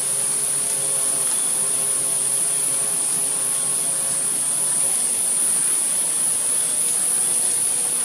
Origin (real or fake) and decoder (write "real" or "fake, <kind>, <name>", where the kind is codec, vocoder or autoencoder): fake, vocoder, BigVGAN v2